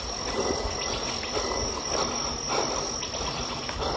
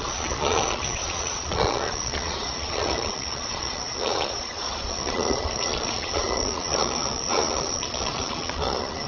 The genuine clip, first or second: first